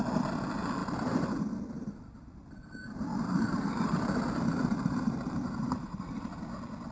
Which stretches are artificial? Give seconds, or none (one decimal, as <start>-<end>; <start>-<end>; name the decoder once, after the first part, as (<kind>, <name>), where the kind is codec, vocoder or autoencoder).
2.8-6.3 (vocoder, BigVGAN v2)